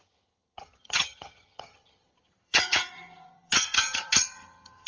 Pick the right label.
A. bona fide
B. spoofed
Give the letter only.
B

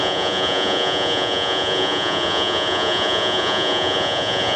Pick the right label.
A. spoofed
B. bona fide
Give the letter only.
A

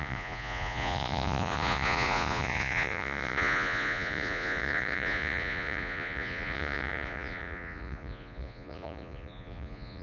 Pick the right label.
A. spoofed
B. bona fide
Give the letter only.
A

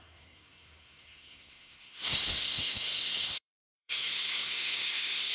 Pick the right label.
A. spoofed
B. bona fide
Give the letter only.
A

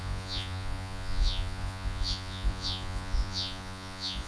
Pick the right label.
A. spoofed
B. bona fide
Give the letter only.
A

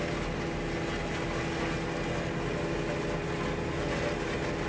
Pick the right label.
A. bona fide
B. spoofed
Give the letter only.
A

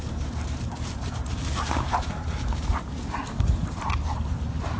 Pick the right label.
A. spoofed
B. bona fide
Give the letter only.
A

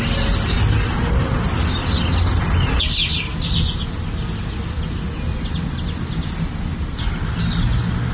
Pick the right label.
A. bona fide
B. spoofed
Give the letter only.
A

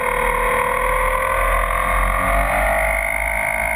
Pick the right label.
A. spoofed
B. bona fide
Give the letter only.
B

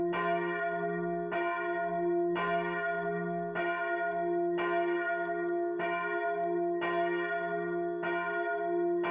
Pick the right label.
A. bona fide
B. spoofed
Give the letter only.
A